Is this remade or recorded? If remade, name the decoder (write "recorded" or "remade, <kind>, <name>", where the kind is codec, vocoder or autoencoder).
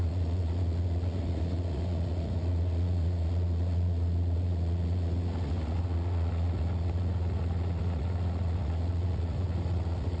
remade, vocoder, Vocos